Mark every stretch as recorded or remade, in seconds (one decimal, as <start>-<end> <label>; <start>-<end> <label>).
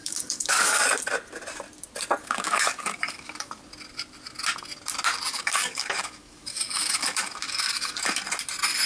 0.0-0.8 remade; 0.8-2.2 recorded; 2.2-3.6 remade; 3.6-5.3 recorded; 5.3-7.9 remade; 7.9-8.9 recorded